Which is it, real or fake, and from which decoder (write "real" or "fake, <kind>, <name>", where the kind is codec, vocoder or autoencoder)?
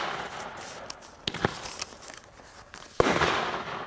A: real